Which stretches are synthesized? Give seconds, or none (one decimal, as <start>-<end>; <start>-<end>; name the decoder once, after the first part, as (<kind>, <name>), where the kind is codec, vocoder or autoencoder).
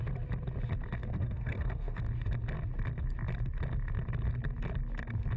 1.0-2.0 (codec, SNAC)